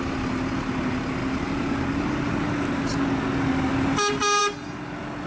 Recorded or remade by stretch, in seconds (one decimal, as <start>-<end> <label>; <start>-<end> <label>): 0.0-5.3 recorded